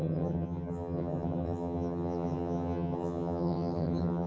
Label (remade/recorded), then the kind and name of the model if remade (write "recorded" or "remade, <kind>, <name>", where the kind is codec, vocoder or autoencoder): remade, vocoder, HiFi-GAN